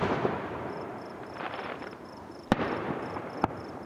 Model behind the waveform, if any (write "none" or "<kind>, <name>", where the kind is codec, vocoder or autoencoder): vocoder, BigVGAN v2